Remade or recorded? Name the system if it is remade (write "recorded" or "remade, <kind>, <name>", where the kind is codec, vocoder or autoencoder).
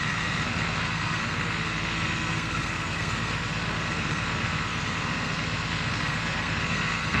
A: remade, codec, SNAC